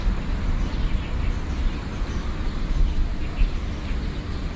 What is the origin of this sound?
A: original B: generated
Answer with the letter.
A